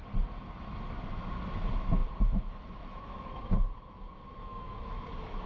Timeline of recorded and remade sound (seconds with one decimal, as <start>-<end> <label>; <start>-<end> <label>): 0.0-0.6 recorded; 0.6-5.5 remade